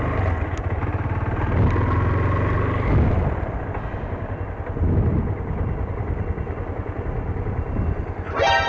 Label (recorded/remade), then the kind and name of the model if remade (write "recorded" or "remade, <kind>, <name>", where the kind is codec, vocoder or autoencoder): recorded